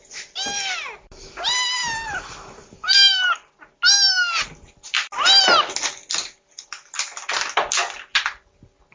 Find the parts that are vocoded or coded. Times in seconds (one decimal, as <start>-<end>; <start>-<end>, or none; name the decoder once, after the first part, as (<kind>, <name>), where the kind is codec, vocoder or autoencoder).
none